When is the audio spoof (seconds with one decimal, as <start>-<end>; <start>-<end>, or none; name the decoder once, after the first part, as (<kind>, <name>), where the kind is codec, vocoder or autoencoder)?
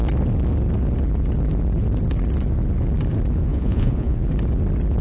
3.5-4.2 (vocoder, Vocos)